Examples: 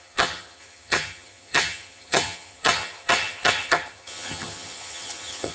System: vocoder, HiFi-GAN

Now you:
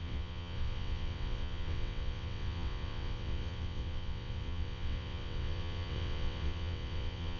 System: vocoder, WaveNeXt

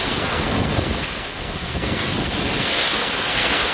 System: codec, SNAC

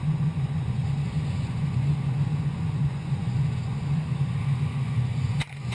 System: vocoder, Vocos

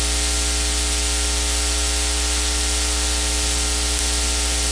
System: none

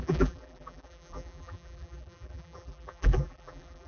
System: vocoder, BigVGAN v2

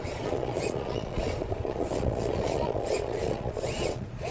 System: vocoder, Vocos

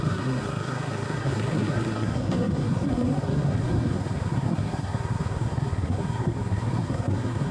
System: codec, SNAC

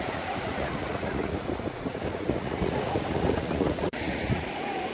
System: vocoder, Vocos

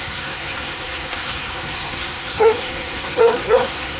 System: codec, SNAC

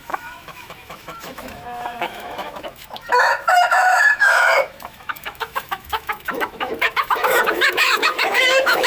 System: autoencoder, DAC-VAE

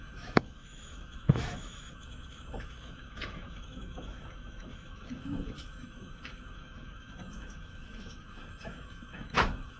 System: autoencoder, DAC-VAE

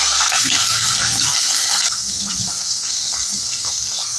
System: codec, SNAC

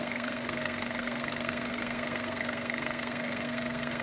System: codec, SNAC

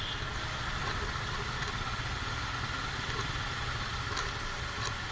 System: none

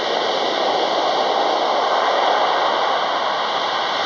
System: none